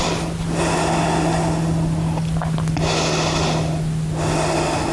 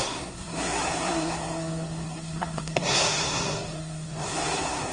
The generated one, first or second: second